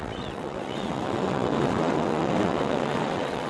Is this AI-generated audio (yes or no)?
yes